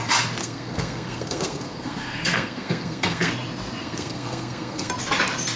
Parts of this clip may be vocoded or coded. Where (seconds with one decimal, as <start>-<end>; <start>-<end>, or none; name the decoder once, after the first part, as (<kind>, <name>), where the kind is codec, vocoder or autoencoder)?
0.4-3.3 (codec, SNAC); 3.8-4.9